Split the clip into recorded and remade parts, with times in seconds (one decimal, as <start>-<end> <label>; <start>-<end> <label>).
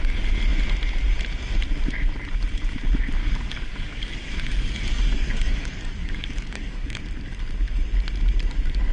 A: 0.0-3.2 recorded; 3.2-7.0 remade; 7.0-8.9 recorded